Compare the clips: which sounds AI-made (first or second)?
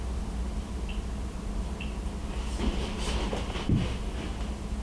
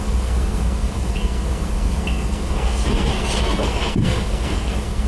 second